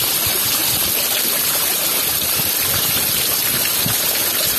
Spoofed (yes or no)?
no